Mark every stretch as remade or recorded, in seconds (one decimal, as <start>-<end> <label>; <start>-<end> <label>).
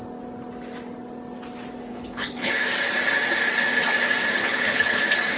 0.0-1.9 recorded; 1.9-2.5 remade; 2.5-4.4 recorded; 4.4-5.0 remade; 5.0-5.4 recorded